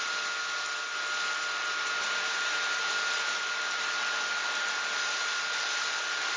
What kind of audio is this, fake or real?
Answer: real